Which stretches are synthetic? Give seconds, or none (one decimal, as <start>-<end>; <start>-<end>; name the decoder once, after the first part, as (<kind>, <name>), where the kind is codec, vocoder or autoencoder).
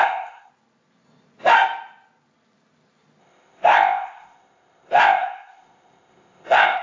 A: 0.0-0.5 (codec, ZipCodec); 3.2-6.8